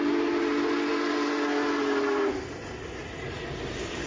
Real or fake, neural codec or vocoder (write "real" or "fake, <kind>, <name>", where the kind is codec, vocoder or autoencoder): real